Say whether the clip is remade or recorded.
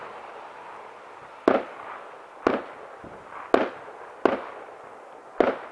recorded